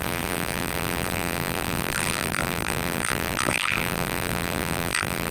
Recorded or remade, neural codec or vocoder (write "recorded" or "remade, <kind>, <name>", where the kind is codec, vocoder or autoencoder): remade, vocoder, BigVGAN v2